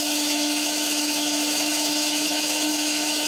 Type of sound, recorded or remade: remade